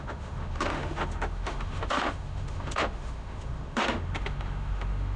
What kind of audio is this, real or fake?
fake